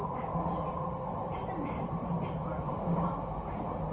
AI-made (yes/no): no